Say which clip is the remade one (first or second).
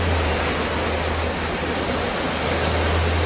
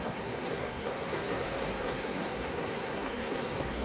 second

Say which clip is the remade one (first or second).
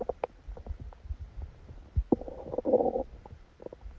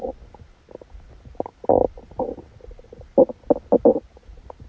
first